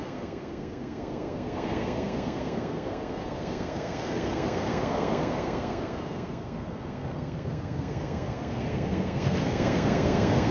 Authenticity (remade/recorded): remade